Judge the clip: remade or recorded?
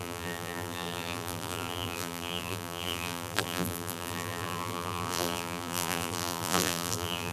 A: remade